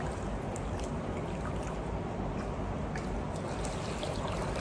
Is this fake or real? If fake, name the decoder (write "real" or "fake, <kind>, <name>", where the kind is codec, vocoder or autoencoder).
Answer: real